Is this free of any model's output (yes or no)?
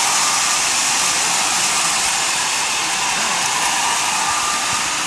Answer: yes